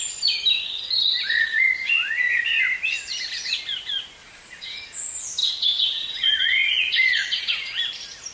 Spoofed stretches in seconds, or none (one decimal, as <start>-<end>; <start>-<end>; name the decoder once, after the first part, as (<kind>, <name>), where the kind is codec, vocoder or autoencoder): 1.3-2.5 (vocoder, Vocos); 4.2-4.8; 5.4-7.8